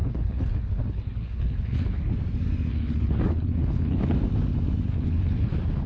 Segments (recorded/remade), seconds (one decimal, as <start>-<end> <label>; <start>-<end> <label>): 0.0-2.1 remade; 2.1-2.7 recorded; 2.7-4.0 remade; 4.0-4.9 recorded; 4.9-5.5 remade; 5.5-5.9 recorded